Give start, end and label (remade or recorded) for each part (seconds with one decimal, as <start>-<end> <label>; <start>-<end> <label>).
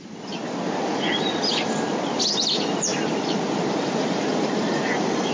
0.0-5.3 recorded